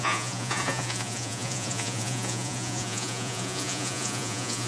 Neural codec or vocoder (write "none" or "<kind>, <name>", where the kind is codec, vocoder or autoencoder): vocoder, Vocos